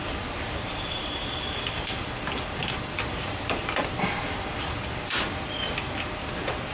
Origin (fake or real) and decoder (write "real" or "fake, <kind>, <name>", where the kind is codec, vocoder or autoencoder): fake, vocoder, BigVGAN v2